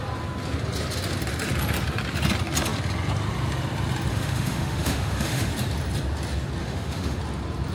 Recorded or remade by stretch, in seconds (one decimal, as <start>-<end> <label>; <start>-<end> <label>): 0.0-4.1 recorded; 4.1-5.5 remade; 5.5-6.6 recorded; 6.6-7.2 remade; 7.2-7.7 recorded